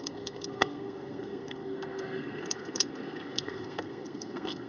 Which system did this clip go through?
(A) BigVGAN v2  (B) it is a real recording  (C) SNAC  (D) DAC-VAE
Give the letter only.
C